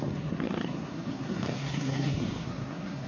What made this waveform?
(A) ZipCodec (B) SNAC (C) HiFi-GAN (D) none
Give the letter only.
B